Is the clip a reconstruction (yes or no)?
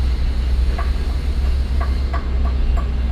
no